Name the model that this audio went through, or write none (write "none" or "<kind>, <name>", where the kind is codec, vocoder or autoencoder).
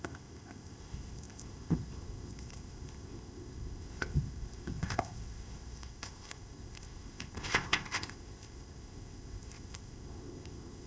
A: codec, ZipCodec